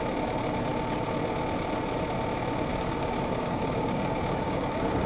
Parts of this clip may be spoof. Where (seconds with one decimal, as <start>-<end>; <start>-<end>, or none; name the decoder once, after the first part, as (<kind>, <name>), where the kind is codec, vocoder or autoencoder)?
2.7-5.1 (codec, DAC)